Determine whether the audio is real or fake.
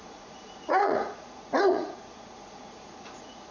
fake